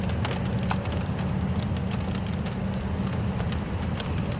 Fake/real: real